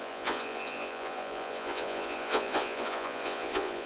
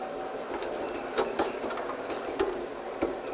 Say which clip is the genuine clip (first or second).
second